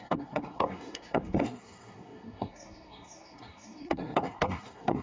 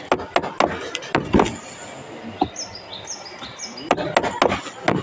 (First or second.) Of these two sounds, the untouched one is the second